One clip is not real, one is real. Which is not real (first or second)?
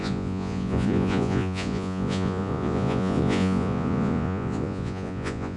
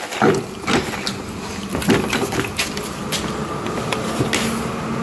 first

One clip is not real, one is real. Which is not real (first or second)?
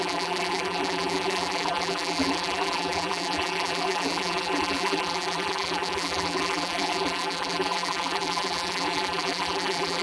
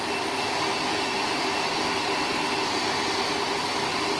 first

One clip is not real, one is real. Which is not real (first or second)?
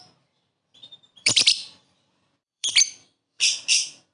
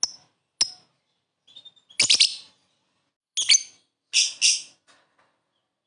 first